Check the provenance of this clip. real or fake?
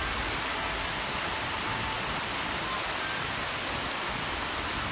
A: real